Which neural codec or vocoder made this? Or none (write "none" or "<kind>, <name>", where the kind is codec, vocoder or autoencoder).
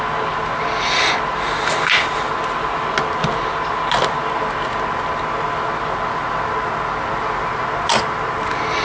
none